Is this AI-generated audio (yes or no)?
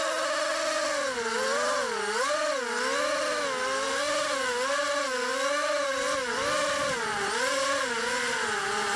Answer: no